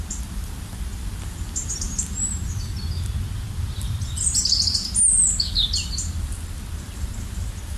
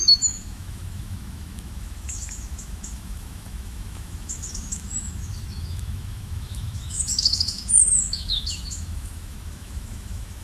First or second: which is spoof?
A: second